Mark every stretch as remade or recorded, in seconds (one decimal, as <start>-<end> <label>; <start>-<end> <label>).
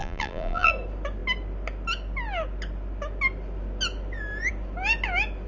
0.0-0.7 remade; 0.7-5.5 recorded